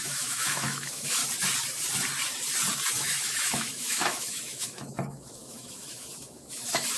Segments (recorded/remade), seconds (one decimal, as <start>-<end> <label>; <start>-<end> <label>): 0.0-1.2 remade; 1.2-2.9 recorded; 2.9-7.0 remade